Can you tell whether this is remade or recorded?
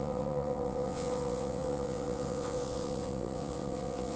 remade